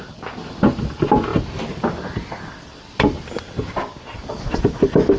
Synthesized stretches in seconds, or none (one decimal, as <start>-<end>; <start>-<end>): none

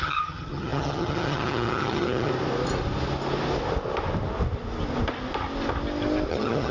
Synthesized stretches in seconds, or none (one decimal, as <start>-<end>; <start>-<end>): 0.0-2.3; 6.3-6.7

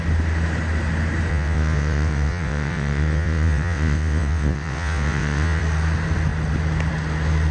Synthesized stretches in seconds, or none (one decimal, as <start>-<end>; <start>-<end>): 1.3-5.6

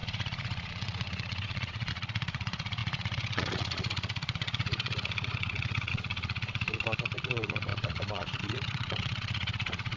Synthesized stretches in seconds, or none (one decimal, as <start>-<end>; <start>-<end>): 0.0-10.0

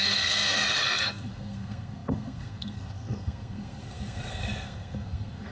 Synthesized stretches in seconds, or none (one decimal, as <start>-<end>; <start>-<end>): 0.0-5.5

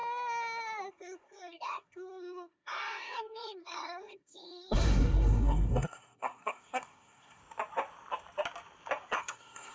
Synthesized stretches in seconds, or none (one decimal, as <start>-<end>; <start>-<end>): 0.9-7.4; 9.2-9.7

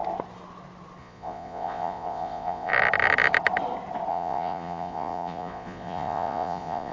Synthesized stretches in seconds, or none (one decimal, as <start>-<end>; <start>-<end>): 1.0-2.7; 4.1-6.9

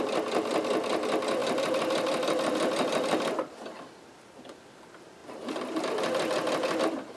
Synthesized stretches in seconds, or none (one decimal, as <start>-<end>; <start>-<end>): none